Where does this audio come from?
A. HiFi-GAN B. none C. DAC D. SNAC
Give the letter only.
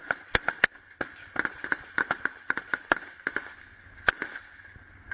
B